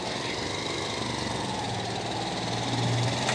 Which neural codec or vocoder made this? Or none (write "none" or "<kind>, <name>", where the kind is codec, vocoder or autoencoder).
none